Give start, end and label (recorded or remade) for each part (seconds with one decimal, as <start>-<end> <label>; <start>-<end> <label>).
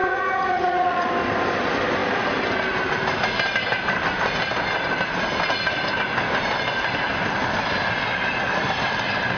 0.0-1.1 remade; 1.1-9.4 recorded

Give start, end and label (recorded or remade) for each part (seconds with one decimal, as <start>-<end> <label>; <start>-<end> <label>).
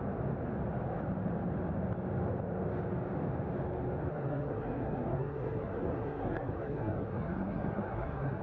0.0-4.1 recorded; 4.1-8.4 remade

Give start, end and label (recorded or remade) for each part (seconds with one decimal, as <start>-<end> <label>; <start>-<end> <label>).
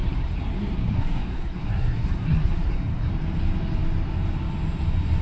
0.0-3.1 remade; 3.1-5.2 recorded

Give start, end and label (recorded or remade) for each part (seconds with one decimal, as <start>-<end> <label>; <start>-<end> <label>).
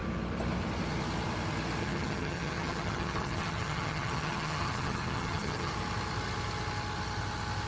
0.0-1.8 recorded; 1.8-5.7 remade; 5.7-7.7 recorded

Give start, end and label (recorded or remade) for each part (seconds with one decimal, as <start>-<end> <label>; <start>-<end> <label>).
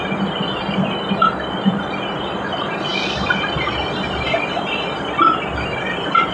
0.0-6.3 recorded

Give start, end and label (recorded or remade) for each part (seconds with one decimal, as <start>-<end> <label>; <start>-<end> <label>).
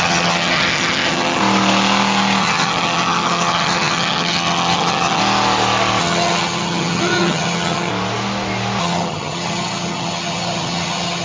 0.0-1.4 remade; 1.4-2.4 recorded; 2.4-5.2 remade; 5.2-6.0 recorded; 6.0-7.9 remade; 7.9-8.8 recorded; 8.8-11.2 remade